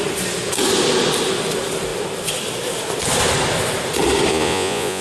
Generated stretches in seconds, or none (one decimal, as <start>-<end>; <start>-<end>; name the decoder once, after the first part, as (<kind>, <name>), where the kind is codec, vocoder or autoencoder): 4.3-5.0 (vocoder, Vocos)

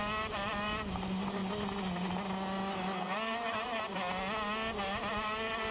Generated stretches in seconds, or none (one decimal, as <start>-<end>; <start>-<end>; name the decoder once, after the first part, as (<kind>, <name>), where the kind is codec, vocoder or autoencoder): 0.0-1.4 (vocoder, BigVGAN v2); 3.0-3.7; 5.1-5.7

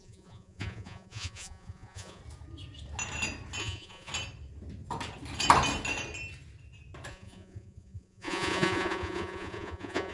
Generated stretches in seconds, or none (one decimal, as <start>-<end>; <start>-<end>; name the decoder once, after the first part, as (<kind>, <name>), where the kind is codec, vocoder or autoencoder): 0.0-2.2 (vocoder, Vocos); 3.6-4.1; 7.1-10.1

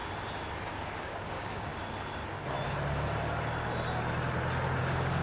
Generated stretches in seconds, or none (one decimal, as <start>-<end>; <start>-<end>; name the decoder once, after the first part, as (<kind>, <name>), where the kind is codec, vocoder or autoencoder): 0.7-1.7 (codec, DAC); 4.8-5.2

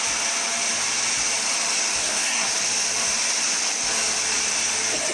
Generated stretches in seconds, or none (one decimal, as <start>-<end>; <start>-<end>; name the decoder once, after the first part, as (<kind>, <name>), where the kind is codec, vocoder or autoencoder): 2.0-2.5 (codec, SNAC)

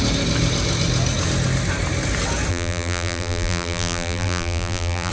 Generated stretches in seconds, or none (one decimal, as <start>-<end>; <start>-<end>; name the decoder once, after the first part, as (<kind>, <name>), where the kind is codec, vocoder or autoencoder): 2.5-5.1 (vocoder, BigVGAN v2)

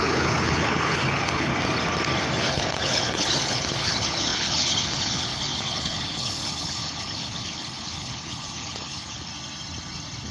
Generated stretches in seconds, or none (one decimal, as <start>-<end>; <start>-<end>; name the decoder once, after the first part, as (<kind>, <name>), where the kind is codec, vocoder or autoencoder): 0.0-1.5 (codec, HILCodec); 2.4-9.3